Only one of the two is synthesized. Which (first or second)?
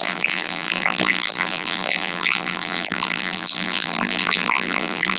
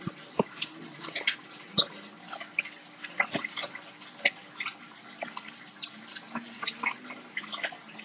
first